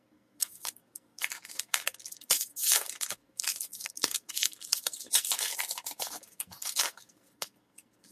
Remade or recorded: remade